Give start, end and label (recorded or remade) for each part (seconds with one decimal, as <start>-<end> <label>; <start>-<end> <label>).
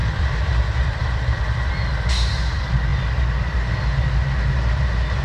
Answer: 0.0-1.7 remade; 1.7-5.2 recorded